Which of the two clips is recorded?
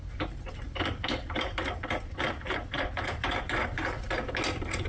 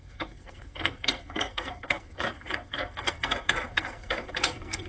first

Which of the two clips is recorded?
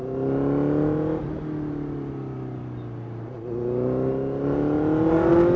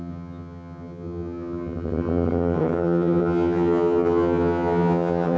first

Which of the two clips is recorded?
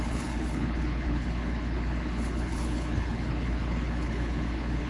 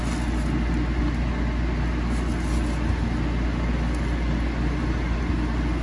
second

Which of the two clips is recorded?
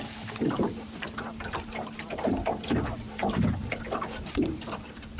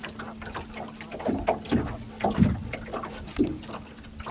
second